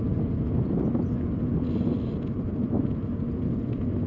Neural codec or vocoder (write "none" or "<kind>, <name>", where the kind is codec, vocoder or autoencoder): none